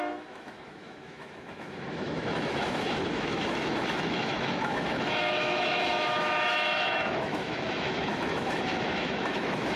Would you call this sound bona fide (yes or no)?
no